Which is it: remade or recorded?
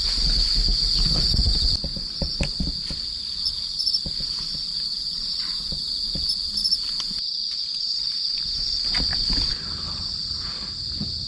recorded